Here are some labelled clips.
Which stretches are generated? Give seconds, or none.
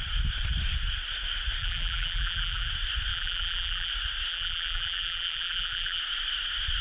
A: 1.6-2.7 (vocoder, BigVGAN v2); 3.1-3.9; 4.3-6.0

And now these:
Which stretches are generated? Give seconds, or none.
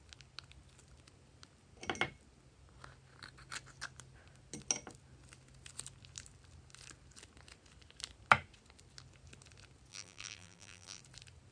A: 9.9-11.0 (vocoder, BigVGAN v2)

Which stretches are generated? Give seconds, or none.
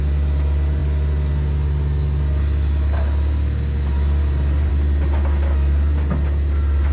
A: none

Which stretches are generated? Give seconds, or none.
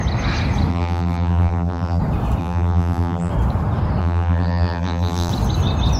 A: 0.7-2.0 (vocoder, BigVGAN v2); 2.4-3.3; 4.0-5.3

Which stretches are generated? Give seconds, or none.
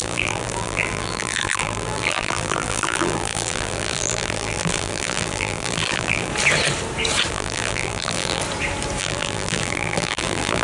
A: 0.0-6.3 (vocoder, BigVGAN v2); 7.3-8.4; 9.0-10.6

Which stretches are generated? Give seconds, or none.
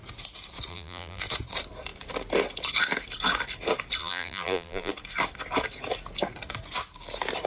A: 0.7-1.2 (vocoder, BigVGAN v2); 4.0-4.9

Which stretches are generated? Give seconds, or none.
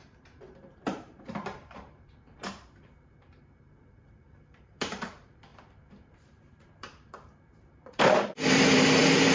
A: 0.0-9.3 (vocoder, BigVGAN v2)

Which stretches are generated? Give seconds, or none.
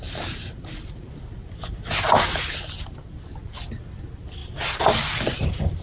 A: 0.0-1.4 (vocoder, BigVGAN v2); 2.1-3.4; 4.0-4.4